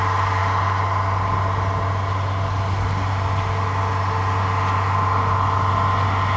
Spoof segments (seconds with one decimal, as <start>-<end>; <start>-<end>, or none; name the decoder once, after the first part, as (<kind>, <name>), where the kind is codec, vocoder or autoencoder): none